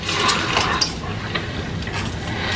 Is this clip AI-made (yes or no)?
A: no